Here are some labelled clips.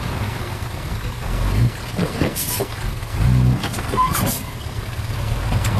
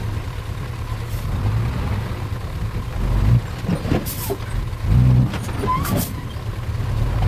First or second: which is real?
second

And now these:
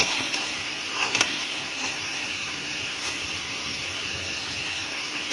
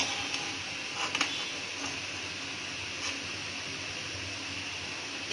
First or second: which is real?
second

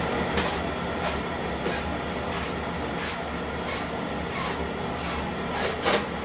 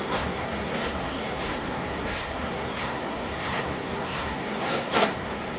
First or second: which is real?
first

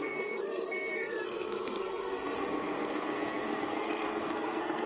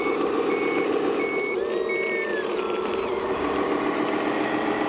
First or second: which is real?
second